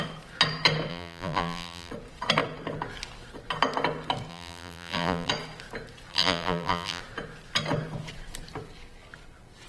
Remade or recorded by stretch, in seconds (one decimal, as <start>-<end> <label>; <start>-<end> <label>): 0.0-0.9 recorded; 0.9-1.9 remade; 1.9-4.3 recorded; 4.3-5.3 remade; 5.3-6.1 recorded; 6.1-7.0 remade; 7.0-9.7 recorded